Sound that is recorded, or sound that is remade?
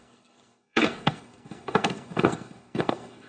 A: remade